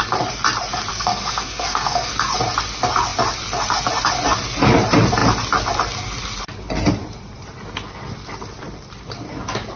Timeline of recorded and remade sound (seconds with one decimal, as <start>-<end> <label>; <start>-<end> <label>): 0.0-0.9 recorded; 0.9-2.1 remade; 2.1-9.8 recorded